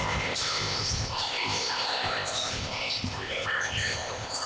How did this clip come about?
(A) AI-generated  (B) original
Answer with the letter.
A